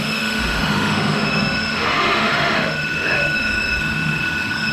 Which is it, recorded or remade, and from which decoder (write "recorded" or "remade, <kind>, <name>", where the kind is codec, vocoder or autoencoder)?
remade, autoencoder, DAC-VAE